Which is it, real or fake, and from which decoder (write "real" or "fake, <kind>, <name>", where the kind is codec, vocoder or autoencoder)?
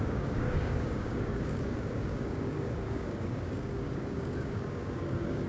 fake, codec, DAC